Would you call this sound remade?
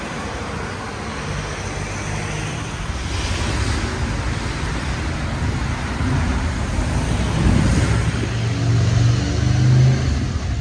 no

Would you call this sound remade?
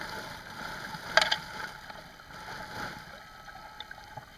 no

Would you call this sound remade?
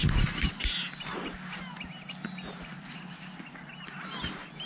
no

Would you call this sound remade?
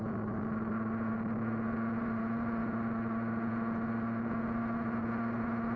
no